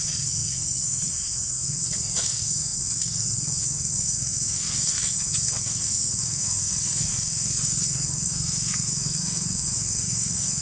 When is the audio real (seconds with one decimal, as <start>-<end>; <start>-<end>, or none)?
none